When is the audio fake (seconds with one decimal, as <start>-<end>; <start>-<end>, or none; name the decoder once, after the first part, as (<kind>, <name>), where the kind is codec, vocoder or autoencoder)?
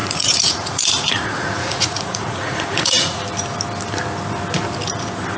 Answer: 0.0-3.2 (vocoder, Vocos)